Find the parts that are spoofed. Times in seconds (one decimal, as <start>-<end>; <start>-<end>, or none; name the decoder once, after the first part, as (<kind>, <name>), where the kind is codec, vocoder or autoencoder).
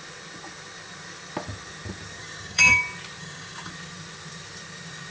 2.2-2.8 (codec, DAC); 3.2-3.7